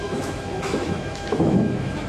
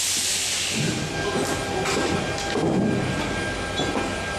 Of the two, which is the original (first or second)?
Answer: second